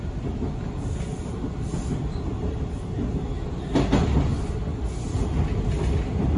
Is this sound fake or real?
real